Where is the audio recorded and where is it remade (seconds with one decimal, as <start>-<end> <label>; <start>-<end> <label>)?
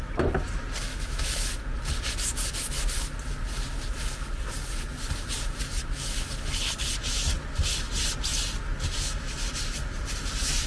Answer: 0.0-0.9 recorded; 0.9-1.5 remade; 1.5-10.7 recorded